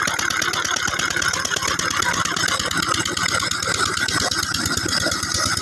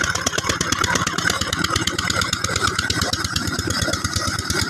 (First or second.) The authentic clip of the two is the first